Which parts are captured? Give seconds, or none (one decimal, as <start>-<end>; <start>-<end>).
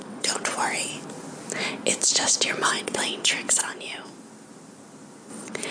0.9-2.7; 3.6-5.3